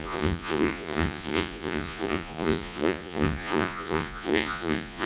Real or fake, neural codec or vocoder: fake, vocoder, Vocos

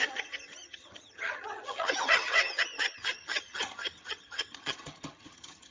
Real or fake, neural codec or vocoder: fake, vocoder, HiFi-GAN